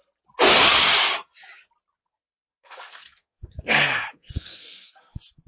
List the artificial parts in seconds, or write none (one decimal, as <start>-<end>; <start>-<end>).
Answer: 2.0-5.5